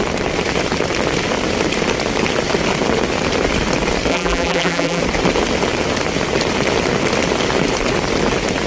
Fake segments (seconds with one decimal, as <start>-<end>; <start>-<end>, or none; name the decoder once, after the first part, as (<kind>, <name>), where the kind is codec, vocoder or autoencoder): 4.1-5.0 (vocoder, BigVGAN v2)